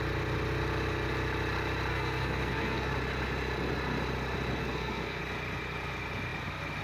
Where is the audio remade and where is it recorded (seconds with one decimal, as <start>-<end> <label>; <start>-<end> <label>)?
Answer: 0.0-1.9 recorded; 1.9-2.9 remade; 2.9-4.6 recorded; 4.6-5.2 remade; 5.2-6.8 recorded